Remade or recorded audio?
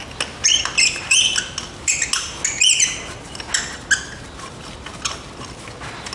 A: recorded